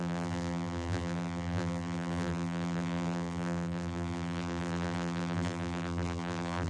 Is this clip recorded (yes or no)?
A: no